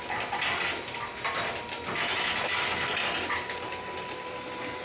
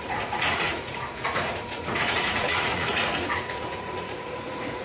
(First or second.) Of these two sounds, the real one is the first